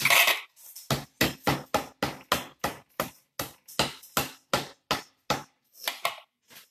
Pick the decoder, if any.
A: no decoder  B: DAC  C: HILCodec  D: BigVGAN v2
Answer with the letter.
A